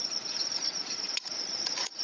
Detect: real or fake fake